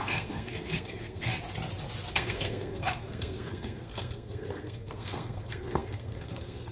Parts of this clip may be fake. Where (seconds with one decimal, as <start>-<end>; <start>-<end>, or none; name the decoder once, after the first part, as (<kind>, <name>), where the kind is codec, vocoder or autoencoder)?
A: 0.0-1.3 (codec, SNAC); 2.1-6.7